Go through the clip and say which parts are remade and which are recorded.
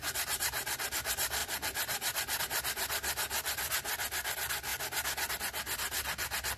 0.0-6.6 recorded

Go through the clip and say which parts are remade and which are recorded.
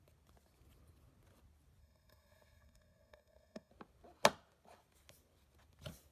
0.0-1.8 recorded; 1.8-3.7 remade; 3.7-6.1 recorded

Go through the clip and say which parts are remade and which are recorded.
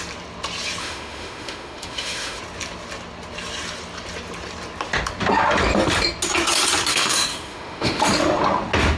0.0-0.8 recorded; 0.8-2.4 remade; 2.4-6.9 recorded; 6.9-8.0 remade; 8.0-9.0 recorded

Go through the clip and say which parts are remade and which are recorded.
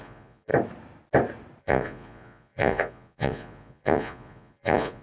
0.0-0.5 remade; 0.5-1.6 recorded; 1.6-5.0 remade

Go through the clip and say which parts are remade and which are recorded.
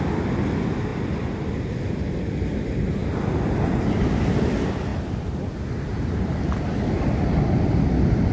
0.0-0.9 recorded; 0.9-1.5 remade; 1.5-8.3 recorded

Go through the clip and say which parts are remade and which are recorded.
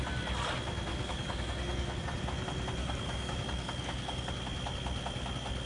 0.0-0.9 recorded; 0.9-2.0 remade; 2.0-2.8 recorded; 2.8-4.3 remade; 4.3-5.7 recorded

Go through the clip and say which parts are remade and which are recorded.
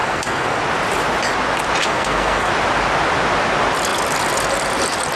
0.0-0.6 remade; 0.6-1.8 recorded; 1.8-2.5 remade; 2.5-5.2 recorded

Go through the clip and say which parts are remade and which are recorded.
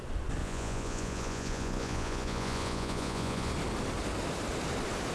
0.0-0.4 recorded; 0.4-3.5 remade; 3.5-5.1 recorded